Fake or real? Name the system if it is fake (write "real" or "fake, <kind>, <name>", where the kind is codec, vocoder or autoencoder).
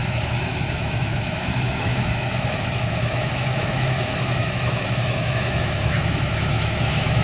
fake, autoencoder, DAC-VAE